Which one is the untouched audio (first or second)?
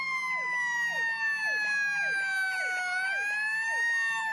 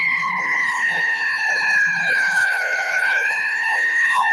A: first